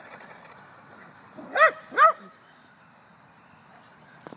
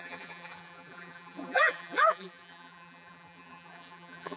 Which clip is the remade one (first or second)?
second